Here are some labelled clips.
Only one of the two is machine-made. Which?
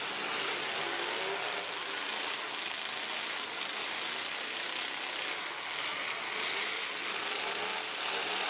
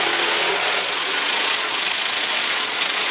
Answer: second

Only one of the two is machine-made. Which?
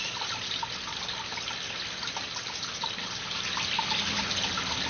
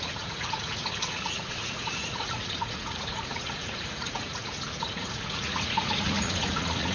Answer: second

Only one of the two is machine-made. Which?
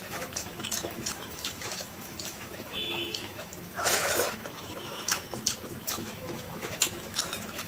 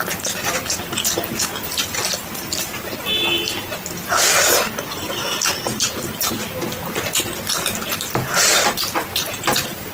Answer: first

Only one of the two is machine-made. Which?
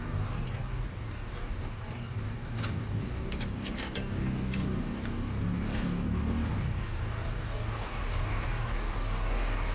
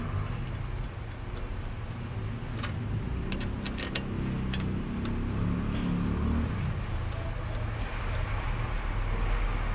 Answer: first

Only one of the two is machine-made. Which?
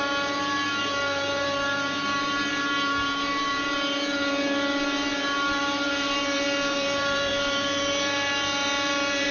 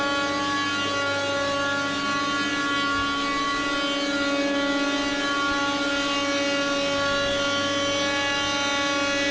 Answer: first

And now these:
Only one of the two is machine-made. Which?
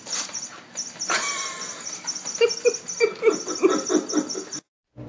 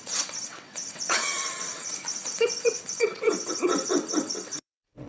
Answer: second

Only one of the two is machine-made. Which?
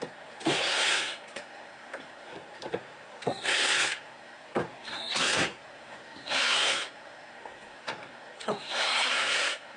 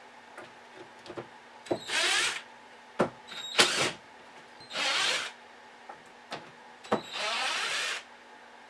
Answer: first